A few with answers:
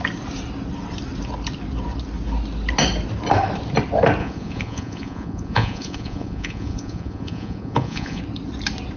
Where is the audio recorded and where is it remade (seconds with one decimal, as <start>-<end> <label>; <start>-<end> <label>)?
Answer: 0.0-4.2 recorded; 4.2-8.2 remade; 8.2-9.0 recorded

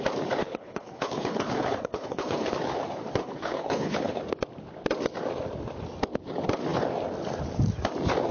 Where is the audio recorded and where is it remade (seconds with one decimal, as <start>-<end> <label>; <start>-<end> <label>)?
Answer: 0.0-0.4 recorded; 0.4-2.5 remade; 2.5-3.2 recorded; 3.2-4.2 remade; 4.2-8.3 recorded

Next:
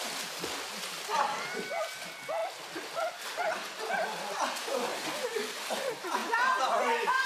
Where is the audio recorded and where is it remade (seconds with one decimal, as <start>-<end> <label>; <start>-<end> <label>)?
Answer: 0.0-7.3 recorded

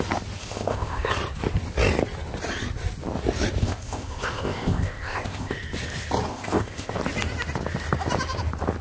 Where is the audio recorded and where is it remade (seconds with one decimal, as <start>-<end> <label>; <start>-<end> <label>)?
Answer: 0.0-0.4 recorded; 0.4-1.1 remade; 1.1-3.6 recorded; 3.6-5.5 remade; 5.5-6.3 recorded; 6.3-6.9 remade; 6.9-8.8 recorded

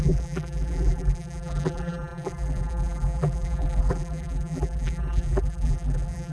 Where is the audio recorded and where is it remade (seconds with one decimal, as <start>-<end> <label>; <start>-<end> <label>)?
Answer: 0.0-6.3 remade

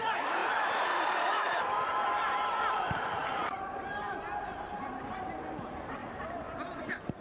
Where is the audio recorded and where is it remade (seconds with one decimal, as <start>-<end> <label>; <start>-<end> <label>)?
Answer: 0.0-6.0 remade; 6.0-6.8 recorded; 6.8-7.2 remade

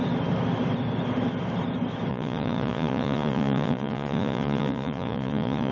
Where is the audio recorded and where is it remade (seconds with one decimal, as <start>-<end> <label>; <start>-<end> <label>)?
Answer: 0.0-2.1 recorded; 2.1-5.7 remade

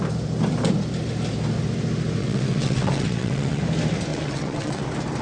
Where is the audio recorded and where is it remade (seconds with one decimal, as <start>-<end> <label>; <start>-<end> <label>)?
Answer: 0.0-2.2 recorded; 2.2-3.6 remade; 3.6-4.1 recorded; 4.1-4.8 remade; 4.8-5.2 recorded